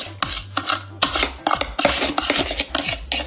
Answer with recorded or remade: recorded